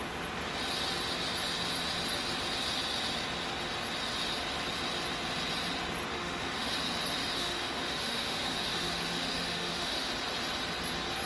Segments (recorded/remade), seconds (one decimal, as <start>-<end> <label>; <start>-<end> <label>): 0.0-6.1 recorded; 6.1-6.7 remade; 6.7-7.2 recorded; 7.2-10.1 remade; 10.1-11.3 recorded